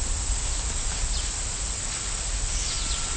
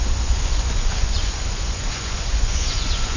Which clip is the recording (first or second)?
first